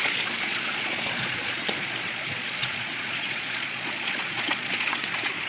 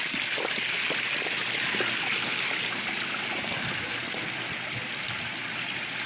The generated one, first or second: first